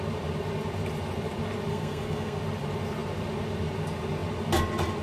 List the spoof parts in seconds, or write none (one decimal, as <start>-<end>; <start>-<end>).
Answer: 1.7-2.4